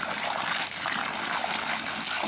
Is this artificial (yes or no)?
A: no